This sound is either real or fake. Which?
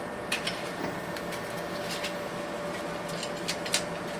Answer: real